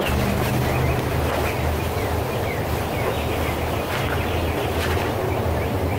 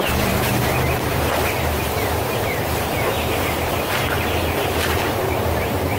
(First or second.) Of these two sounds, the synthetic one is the second